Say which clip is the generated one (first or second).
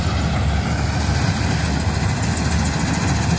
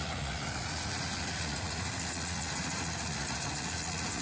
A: second